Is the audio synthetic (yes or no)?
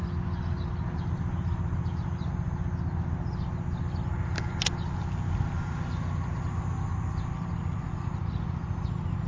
no